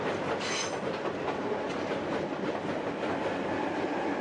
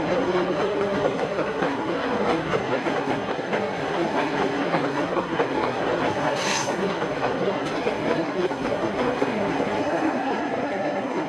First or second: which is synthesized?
second